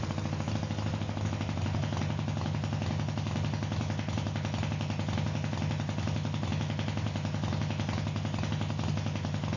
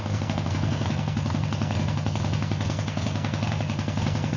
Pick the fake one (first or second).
second